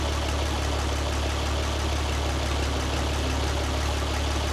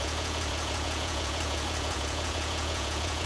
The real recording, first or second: first